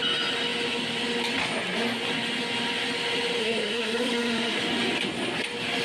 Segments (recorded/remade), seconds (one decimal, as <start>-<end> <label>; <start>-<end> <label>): 0.0-3.4 recorded; 3.4-4.6 remade; 4.6-5.8 recorded